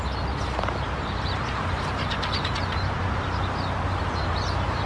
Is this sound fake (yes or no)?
yes